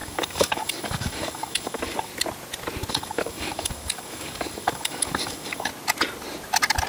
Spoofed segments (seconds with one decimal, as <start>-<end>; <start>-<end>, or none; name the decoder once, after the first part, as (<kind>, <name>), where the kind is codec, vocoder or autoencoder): 0.0-2.1 (codec, DAC); 2.9-5.7